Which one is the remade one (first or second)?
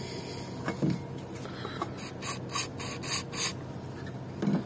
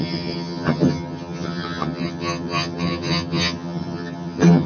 second